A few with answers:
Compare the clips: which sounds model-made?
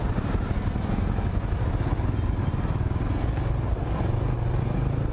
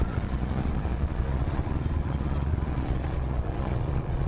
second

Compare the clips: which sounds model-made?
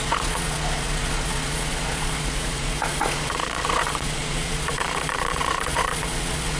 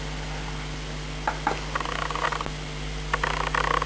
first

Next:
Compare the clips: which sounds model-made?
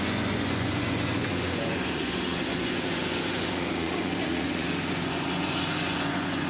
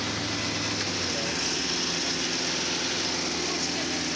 first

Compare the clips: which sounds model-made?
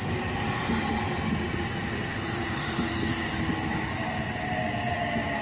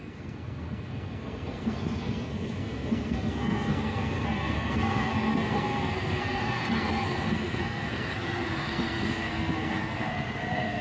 second